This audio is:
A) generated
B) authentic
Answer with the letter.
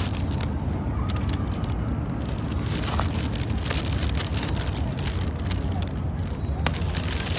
B